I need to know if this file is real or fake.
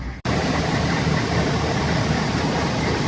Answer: real